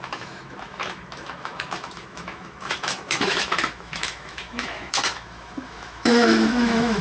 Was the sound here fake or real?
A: fake